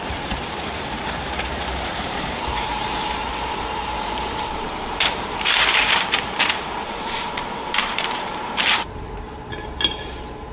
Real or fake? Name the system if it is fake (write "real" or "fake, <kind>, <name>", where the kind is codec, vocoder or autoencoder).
fake, vocoder, BigVGAN v2